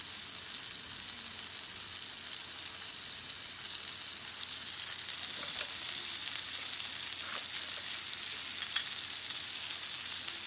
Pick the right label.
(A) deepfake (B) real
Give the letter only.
B